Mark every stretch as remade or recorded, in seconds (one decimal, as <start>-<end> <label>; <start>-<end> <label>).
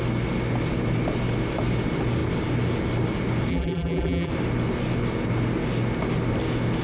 0.0-3.5 recorded; 3.5-4.3 remade; 4.3-6.8 recorded